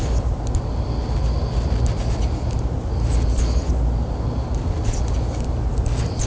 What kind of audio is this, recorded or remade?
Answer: recorded